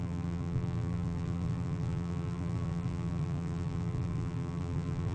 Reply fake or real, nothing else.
fake